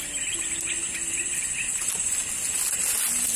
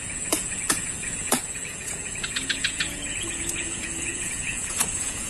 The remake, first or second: second